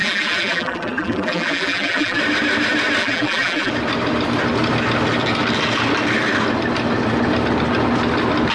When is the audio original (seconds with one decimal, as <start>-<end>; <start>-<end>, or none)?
2.2-3.0; 3.7-8.5